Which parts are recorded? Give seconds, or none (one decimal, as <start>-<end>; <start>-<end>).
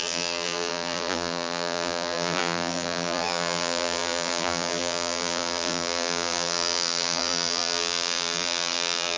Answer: none